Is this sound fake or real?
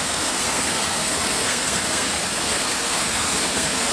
fake